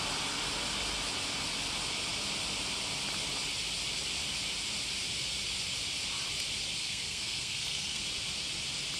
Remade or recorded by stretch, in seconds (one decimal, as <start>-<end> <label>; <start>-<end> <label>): 0.0-6.8 recorded; 6.8-8.0 remade; 8.0-9.0 recorded